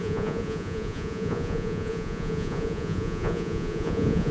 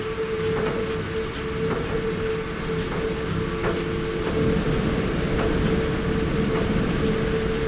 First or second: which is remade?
first